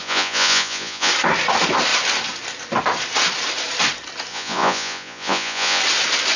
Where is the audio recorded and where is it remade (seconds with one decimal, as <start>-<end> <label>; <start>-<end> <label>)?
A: 0.0-1.1 remade; 1.1-4.3 recorded; 4.3-5.8 remade; 5.8-6.4 recorded